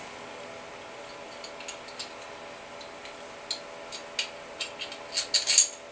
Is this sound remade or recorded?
recorded